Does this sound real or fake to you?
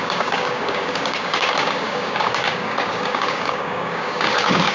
fake